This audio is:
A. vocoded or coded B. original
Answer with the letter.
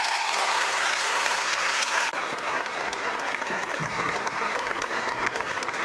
A